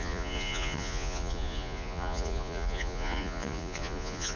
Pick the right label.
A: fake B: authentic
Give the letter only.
A